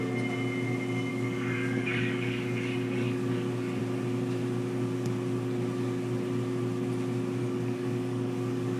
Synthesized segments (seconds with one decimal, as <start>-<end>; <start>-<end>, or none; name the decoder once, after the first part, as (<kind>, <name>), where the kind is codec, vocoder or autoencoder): 1.1-3.8 (codec, DAC); 7.4-8.8